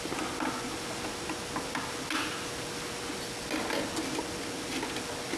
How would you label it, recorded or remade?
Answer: recorded